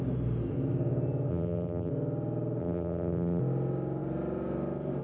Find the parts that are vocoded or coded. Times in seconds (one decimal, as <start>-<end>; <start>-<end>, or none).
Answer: 1.3-1.9; 2.6-3.4